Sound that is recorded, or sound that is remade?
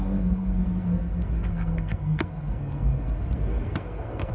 remade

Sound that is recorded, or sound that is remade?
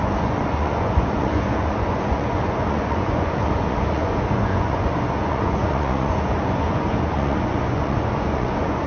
remade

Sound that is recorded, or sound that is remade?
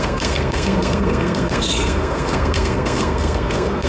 remade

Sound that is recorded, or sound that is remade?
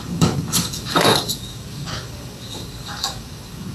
remade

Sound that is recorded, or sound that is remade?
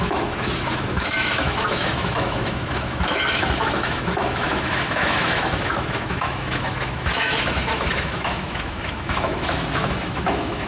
remade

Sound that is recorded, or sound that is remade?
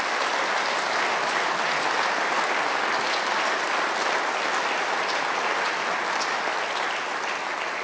recorded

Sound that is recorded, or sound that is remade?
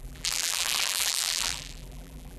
remade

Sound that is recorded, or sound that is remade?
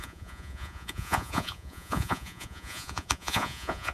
remade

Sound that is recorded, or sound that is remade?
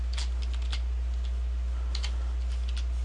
recorded